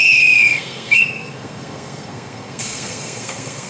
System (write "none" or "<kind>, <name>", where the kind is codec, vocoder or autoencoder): codec, SNAC